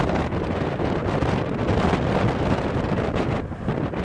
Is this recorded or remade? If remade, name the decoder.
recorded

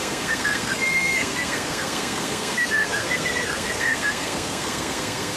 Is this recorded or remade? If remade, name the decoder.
remade, codec, SNAC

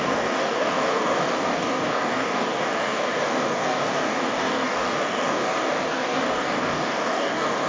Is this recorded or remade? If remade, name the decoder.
remade, codec, DAC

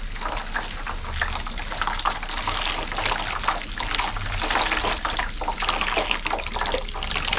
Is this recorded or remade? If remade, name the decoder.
recorded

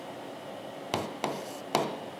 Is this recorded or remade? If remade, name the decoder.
recorded